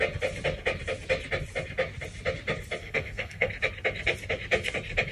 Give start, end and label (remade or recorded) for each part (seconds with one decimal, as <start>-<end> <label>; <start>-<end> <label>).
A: 0.0-2.8 recorded; 2.8-3.5 remade; 3.5-5.1 recorded